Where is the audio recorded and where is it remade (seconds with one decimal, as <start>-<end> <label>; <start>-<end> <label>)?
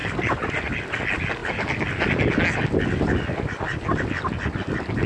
0.0-0.9 remade; 0.9-5.1 recorded